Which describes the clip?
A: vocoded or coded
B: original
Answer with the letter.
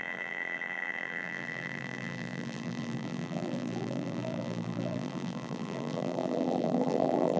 A